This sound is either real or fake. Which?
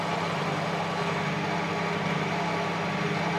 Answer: real